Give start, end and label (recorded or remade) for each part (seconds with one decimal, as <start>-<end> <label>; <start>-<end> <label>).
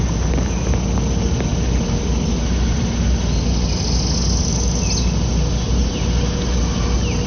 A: 0.0-7.3 recorded